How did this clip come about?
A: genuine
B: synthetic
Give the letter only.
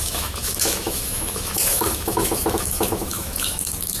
B